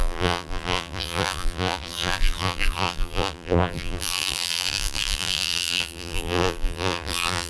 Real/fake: fake